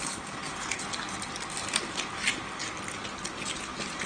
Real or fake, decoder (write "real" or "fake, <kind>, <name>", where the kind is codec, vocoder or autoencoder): real